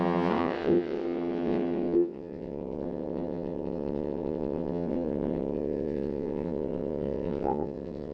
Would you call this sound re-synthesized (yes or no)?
yes